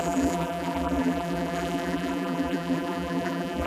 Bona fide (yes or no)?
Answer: no